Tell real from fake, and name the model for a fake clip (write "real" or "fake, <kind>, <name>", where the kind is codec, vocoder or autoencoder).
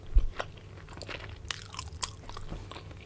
real